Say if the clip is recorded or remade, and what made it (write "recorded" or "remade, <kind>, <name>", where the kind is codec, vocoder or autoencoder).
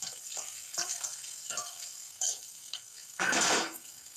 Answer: remade, codec, SNAC